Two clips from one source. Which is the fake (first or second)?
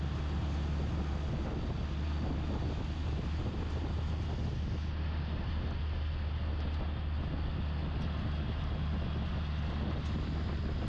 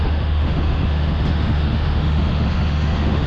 second